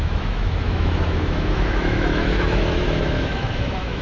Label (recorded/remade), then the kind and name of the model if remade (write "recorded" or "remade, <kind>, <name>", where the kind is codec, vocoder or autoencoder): remade, autoencoder, DAC-VAE